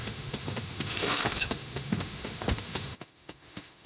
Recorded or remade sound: remade